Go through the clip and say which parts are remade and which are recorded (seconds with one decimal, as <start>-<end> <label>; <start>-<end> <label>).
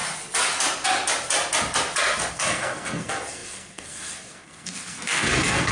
0.0-2.3 recorded; 2.3-5.7 remade